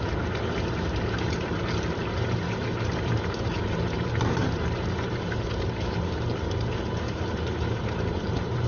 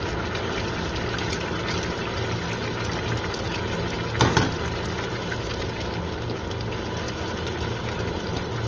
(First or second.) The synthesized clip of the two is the first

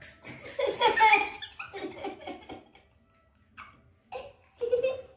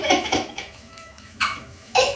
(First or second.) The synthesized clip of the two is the second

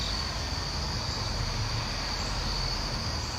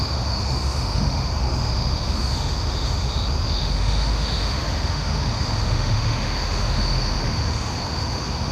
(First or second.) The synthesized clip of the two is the second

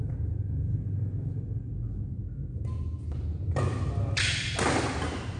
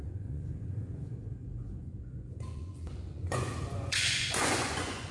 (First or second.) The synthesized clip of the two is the second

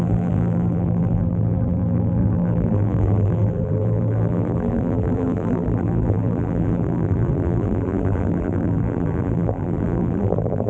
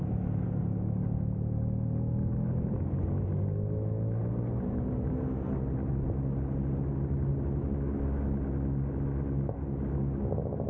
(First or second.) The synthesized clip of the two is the first